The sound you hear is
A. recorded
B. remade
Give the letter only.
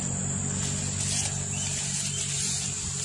A